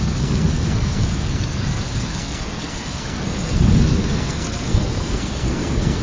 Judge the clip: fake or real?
fake